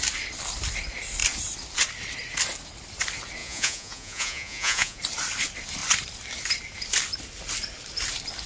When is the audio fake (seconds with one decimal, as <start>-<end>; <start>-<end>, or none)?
3.4-5.0